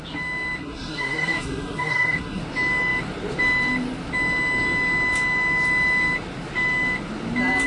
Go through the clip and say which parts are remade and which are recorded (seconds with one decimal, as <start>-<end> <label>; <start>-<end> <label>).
0.0-0.6 recorded; 0.6-2.4 remade; 2.4-7.7 recorded

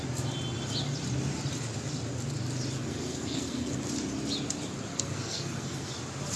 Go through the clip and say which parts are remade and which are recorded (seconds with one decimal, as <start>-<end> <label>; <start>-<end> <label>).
0.0-2.8 recorded; 2.8-3.8 remade; 3.8-4.9 recorded; 4.9-5.9 remade; 5.9-6.4 recorded

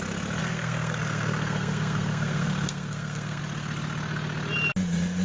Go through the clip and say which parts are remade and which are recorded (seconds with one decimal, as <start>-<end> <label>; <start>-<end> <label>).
0.0-0.4 recorded; 0.4-3.4 remade; 3.4-5.2 recorded

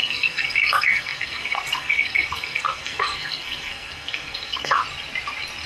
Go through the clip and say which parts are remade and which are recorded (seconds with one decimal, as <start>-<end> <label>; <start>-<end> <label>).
0.0-4.8 remade; 4.8-5.7 recorded